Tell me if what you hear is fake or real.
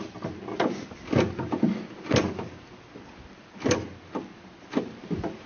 real